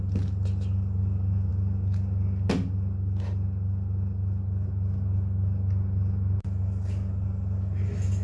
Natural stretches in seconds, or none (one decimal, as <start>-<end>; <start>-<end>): 0.0-8.2